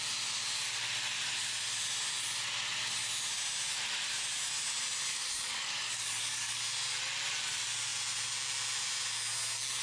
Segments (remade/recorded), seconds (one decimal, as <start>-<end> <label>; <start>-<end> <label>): 0.0-5.1 recorded; 5.1-6.6 remade; 6.6-9.8 recorded